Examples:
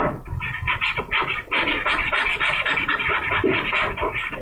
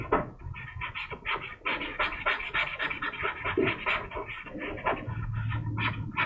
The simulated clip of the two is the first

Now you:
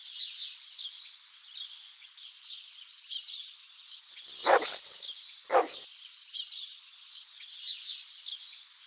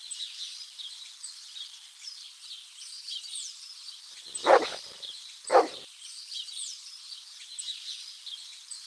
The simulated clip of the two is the second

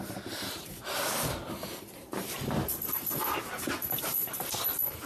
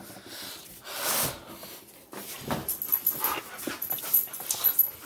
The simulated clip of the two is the first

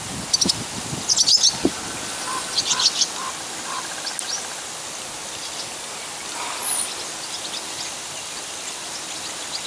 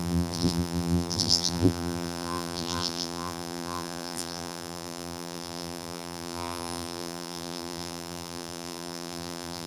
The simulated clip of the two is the second